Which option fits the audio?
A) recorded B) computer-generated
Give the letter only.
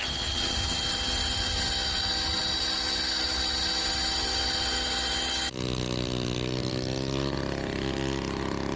A